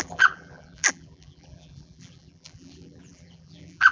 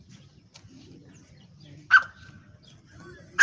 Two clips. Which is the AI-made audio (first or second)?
first